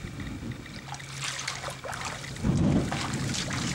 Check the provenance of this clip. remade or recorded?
recorded